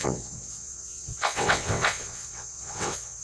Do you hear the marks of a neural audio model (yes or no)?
yes